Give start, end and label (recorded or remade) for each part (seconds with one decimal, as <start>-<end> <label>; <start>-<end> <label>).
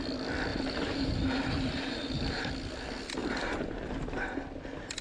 0.0-0.5 recorded; 0.5-2.5 remade; 2.5-3.2 recorded; 3.2-4.0 remade; 4.0-5.0 recorded